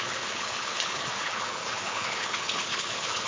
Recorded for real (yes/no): no